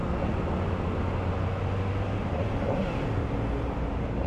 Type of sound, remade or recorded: recorded